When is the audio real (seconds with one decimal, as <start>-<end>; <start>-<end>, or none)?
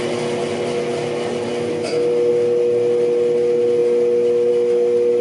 0.0-5.2